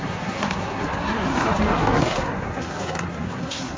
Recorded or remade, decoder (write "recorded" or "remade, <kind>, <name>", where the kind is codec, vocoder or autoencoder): remade, codec, SNAC